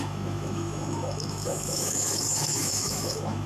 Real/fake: fake